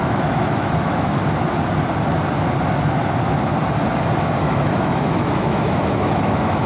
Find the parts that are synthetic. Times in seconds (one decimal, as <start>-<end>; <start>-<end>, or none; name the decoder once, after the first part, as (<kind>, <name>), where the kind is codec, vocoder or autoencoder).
0.0-1.2 (autoencoder, DAC-VAE); 4.4-6.7

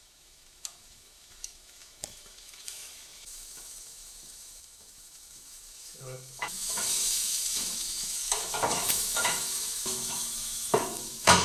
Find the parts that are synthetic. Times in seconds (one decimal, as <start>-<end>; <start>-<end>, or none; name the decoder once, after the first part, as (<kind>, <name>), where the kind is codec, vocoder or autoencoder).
0.0-11.4 (autoencoder, DAC-VAE)

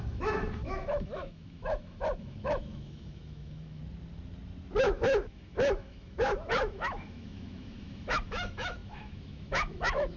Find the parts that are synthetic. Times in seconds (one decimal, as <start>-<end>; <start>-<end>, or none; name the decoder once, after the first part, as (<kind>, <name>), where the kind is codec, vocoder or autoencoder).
0.0-3.8 (autoencoder, DAC-VAE); 4.8-10.2